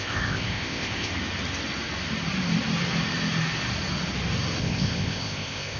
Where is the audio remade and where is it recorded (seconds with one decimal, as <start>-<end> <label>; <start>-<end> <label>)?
0.0-1.1 remade; 1.1-4.6 recorded; 4.6-5.8 remade